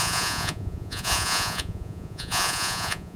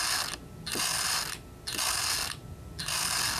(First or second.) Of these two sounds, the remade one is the first